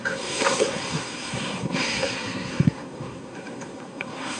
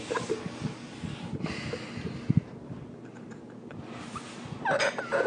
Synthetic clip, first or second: first